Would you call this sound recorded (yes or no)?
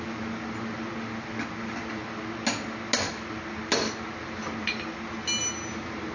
yes